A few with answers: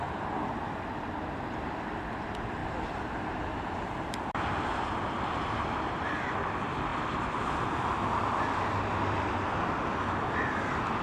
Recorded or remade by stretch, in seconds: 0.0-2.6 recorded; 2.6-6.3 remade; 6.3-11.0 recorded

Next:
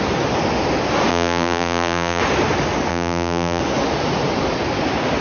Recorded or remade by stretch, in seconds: 0.0-1.1 recorded; 1.1-2.2 remade; 2.2-2.9 recorded; 2.9-3.6 remade; 3.6-5.2 recorded

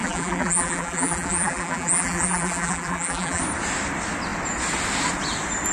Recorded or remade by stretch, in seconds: 0.0-3.4 remade; 3.4-5.7 recorded

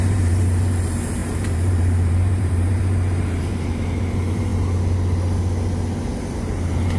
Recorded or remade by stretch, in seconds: 0.0-4.5 remade; 4.5-6.4 recorded; 6.4-7.0 remade

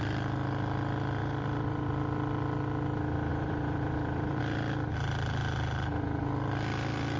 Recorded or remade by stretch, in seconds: 0.0-1.2 recorded; 1.2-1.9 remade; 1.9-3.3 recorded; 3.3-4.4 remade; 4.4-7.2 recorded